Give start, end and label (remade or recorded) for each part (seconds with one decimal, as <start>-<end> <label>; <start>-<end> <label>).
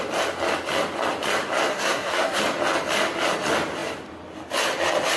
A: 0.0-1.7 recorded; 1.7-2.4 remade; 2.4-5.2 recorded